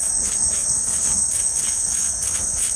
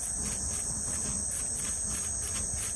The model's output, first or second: first